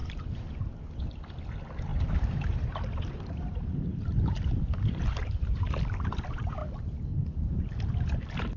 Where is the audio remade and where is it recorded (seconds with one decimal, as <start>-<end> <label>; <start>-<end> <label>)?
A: 0.0-0.6 remade; 0.6-1.9 recorded; 1.9-5.6 remade; 5.6-8.6 recorded